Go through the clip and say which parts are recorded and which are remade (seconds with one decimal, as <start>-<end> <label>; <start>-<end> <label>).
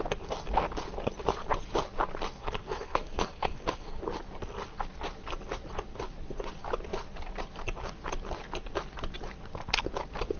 0.0-2.4 recorded; 2.4-4.0 remade; 4.0-10.4 recorded